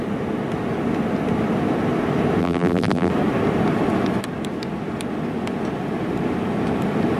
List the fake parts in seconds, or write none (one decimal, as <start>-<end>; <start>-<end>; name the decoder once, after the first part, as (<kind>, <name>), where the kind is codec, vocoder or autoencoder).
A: 2.4-3.1 (vocoder, BigVGAN v2)